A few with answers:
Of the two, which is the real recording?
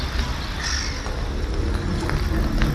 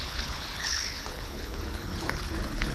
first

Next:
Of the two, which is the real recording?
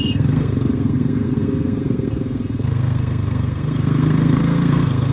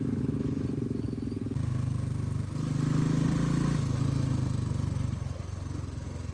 second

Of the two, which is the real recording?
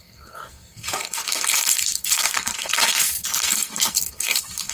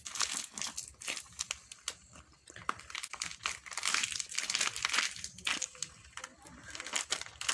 second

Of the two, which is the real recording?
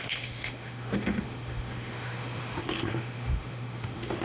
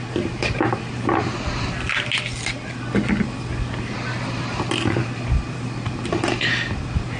second